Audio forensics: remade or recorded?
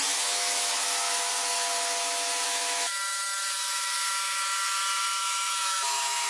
remade